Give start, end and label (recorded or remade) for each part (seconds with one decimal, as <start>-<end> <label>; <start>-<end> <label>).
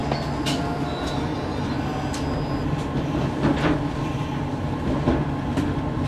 0.0-6.1 recorded